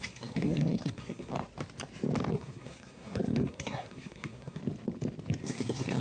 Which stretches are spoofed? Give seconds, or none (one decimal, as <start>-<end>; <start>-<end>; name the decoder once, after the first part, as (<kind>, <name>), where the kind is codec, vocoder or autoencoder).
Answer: 0.0-1.3 (codec, SNAC); 2.3-4.6; 5.4-6.0